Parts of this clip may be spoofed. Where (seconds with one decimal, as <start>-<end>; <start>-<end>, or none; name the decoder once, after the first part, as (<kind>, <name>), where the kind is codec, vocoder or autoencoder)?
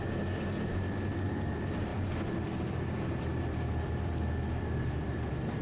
1.9-5.6 (vocoder, BigVGAN v2)